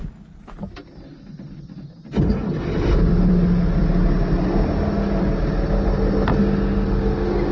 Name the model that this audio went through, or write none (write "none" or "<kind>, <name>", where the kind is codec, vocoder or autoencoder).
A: none